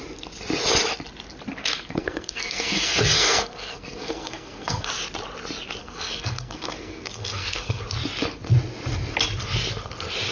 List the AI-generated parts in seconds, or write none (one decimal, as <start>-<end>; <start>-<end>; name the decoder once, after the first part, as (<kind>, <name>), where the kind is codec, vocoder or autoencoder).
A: 1.6-4.9 (codec, SNAC); 5.8-7.8